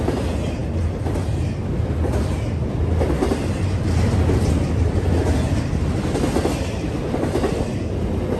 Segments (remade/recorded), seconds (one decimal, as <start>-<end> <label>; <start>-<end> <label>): 0.0-8.4 recorded